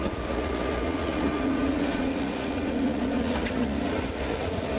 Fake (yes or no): yes